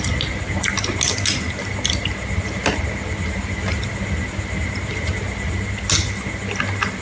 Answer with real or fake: real